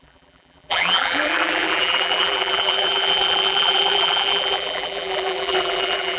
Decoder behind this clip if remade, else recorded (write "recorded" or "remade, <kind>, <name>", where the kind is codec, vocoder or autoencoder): remade, vocoder, BigVGAN v2